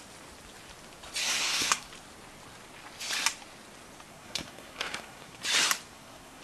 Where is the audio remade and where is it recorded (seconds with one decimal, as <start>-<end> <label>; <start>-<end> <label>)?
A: 0.0-1.2 recorded; 1.2-1.9 remade; 1.9-4.1 recorded; 4.1-5.4 remade; 5.4-5.9 recorded; 5.9-6.4 remade